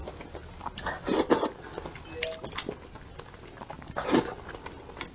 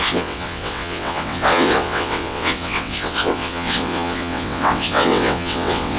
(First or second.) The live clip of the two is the first